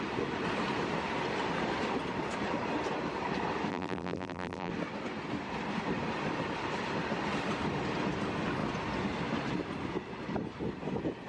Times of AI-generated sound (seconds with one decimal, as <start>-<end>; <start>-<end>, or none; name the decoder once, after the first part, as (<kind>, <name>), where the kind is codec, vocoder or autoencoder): 3.7-4.7 (vocoder, BigVGAN v2)